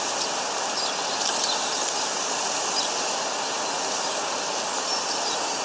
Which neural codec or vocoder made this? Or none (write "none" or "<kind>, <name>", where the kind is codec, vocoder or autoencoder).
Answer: none